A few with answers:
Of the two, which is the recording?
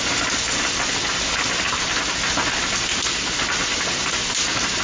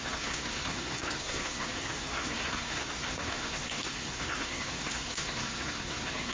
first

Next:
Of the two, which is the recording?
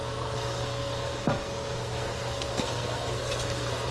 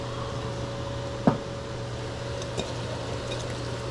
second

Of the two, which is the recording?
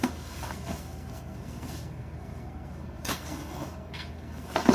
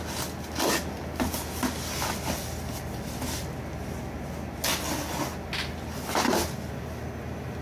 second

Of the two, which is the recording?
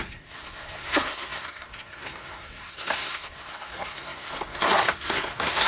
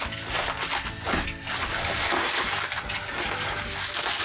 second